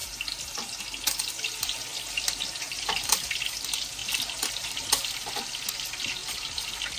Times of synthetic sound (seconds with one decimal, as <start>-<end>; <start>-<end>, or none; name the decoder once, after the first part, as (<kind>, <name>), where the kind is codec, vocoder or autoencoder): 0.0-0.8 (vocoder, BigVGAN v2); 1.9-2.9; 4.0-5.1; 6.2-7.0

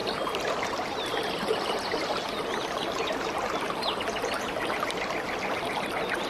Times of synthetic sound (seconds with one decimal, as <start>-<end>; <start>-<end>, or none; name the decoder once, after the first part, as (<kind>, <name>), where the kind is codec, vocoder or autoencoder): 0.0-2.0 (vocoder, BigVGAN v2)

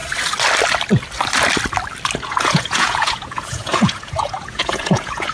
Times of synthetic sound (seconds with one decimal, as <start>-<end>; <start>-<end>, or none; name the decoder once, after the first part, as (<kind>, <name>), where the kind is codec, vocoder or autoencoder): 2.4-5.3 (vocoder, Vocos)

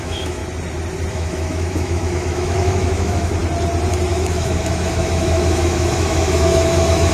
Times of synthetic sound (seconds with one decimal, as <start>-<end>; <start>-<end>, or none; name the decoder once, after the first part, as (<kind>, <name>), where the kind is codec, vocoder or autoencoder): 0.0-0.4 (autoencoder, DAC-VAE); 1.1-3.4; 4.1-7.1

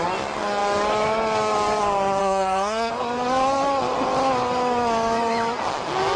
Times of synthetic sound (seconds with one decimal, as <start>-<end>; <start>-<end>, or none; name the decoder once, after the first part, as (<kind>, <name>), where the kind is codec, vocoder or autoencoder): 2.2-2.9 (codec, SNAC)

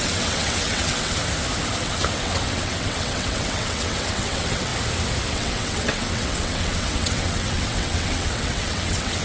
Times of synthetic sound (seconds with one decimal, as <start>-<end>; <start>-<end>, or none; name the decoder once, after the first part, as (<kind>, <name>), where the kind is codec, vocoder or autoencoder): 0.0-1.2 (vocoder, WaveNeXt); 1.8-4.7; 5.3-9.2

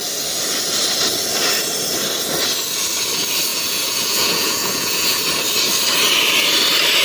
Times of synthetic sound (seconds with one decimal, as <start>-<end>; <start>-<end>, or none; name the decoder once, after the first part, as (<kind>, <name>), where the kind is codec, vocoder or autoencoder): 3.5-5.2 (vocoder, Vocos)